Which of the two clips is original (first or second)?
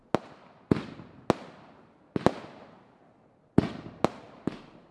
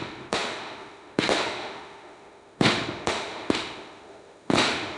first